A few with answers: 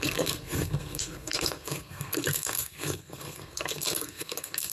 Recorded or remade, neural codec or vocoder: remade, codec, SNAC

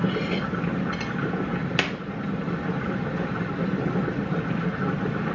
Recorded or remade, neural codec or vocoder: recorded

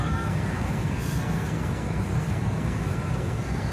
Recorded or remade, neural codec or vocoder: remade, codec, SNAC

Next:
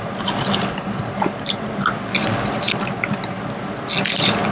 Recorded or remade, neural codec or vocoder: recorded